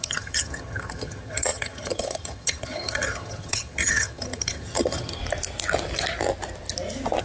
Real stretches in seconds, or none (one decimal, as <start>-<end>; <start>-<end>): 5.2-7.2